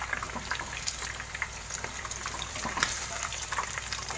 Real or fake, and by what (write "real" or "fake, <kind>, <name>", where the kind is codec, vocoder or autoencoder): fake, vocoder, BigVGAN v2